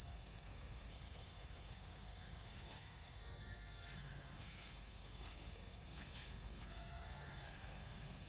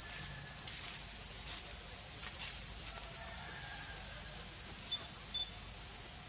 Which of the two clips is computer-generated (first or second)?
first